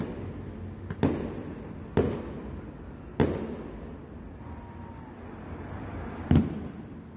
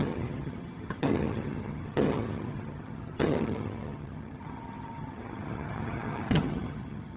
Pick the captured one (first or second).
first